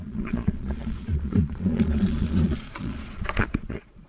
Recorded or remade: remade